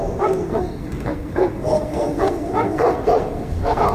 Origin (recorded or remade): remade